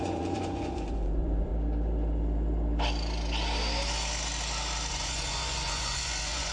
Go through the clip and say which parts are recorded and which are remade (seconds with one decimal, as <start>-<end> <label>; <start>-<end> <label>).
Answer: 0.0-1.5 remade; 1.5-4.9 recorded; 4.9-6.5 remade